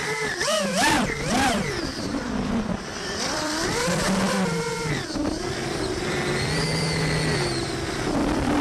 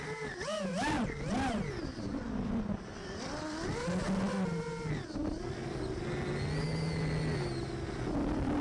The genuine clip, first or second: second